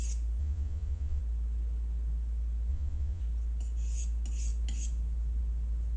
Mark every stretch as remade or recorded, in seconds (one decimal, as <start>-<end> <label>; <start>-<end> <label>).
0.0-0.4 recorded; 0.4-1.2 remade; 1.2-2.7 recorded; 2.7-3.2 remade; 3.2-6.0 recorded